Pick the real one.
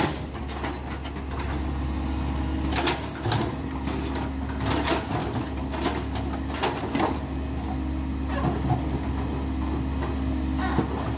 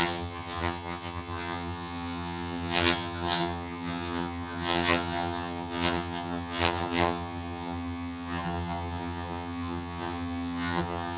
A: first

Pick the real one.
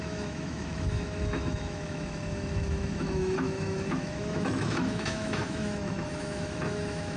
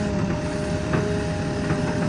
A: second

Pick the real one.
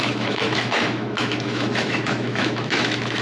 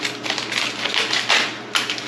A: second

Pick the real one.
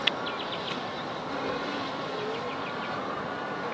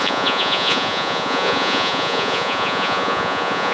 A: first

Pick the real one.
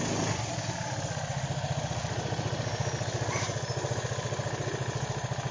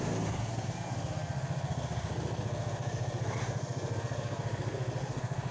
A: first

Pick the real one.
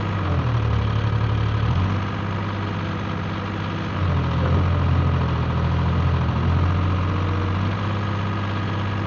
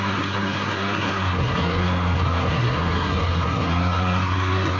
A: first